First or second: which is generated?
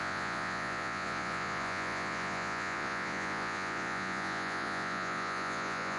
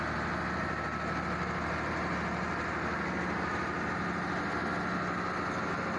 first